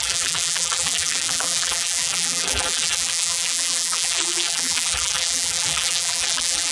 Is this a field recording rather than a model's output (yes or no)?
no